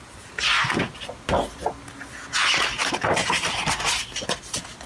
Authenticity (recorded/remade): recorded